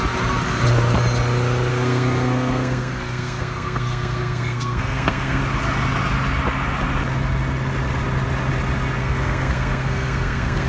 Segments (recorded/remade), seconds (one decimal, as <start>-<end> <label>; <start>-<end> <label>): 0.0-1.7 recorded; 1.7-5.4 remade; 5.4-9.0 recorded; 9.0-10.7 remade